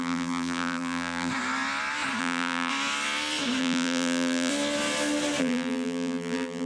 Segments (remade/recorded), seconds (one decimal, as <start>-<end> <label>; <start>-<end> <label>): 0.0-1.3 remade; 1.3-2.2 recorded; 2.2-2.7 remade; 2.7-3.6 recorded; 3.6-4.5 remade; 4.5-5.4 recorded; 5.4-6.7 remade